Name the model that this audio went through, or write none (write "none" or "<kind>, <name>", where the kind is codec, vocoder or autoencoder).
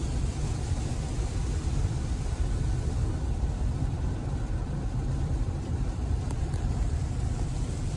vocoder, BigVGAN v2